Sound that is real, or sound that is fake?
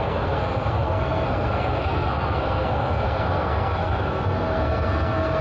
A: fake